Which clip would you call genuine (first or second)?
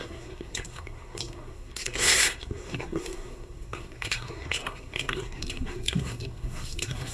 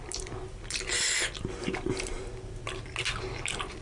second